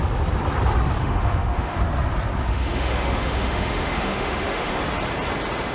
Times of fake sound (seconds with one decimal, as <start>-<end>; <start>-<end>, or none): 1.0-1.7; 2.5-4.7